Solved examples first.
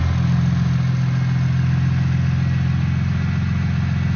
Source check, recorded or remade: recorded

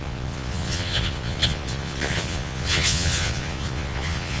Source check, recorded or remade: remade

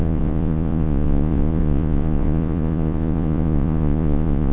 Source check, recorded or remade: remade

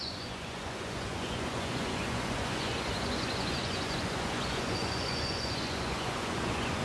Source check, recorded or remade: remade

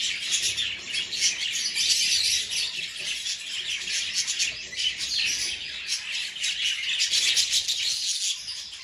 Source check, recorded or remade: recorded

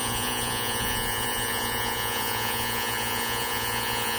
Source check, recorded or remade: remade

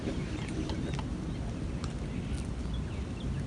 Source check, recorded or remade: recorded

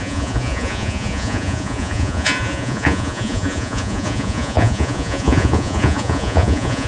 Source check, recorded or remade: remade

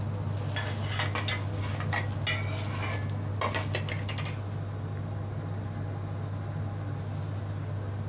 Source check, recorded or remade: recorded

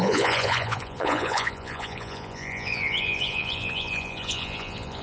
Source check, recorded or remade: remade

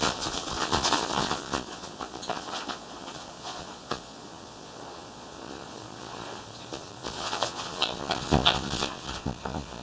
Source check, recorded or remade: remade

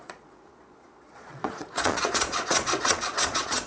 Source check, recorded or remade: remade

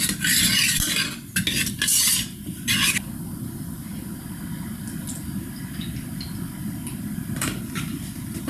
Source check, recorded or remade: recorded